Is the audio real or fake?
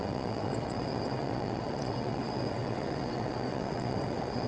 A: fake